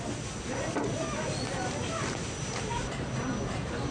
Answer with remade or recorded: recorded